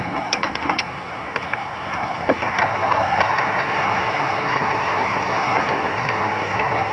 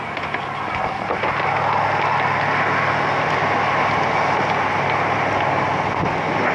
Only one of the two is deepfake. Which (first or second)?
first